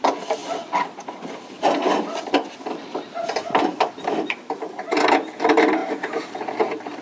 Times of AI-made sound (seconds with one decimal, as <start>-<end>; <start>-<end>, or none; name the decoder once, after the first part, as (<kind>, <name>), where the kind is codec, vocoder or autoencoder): 0.4-4.6 (vocoder, BigVGAN v2); 5.8-7.0